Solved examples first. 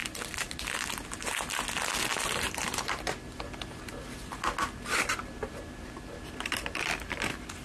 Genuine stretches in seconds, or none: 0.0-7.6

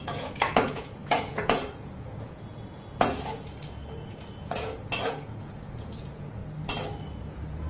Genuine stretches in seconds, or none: 6.4-7.2

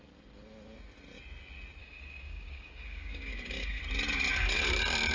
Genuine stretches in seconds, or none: 0.0-1.8; 3.8-5.1

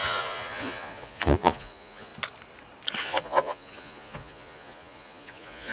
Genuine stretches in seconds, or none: 2.1-3.0